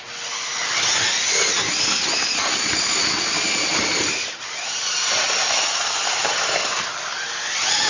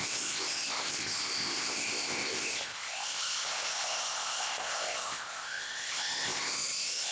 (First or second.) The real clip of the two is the first